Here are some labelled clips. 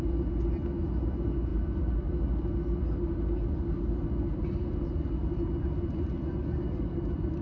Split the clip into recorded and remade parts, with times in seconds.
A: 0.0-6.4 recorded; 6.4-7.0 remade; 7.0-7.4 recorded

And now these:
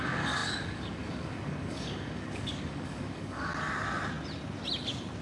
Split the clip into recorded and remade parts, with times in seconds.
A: 0.0-3.5 remade; 3.5-5.2 recorded

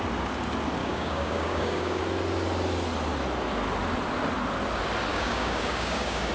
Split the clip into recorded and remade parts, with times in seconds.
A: 0.0-0.8 recorded; 0.8-2.0 remade; 2.0-5.1 recorded; 5.1-6.3 remade